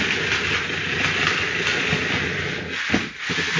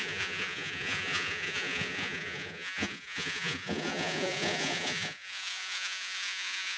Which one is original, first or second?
first